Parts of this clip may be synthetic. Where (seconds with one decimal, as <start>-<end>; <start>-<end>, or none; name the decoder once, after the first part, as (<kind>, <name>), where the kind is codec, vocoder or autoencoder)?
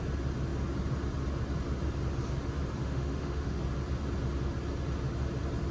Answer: 2.8-3.6 (autoencoder, DAC-VAE)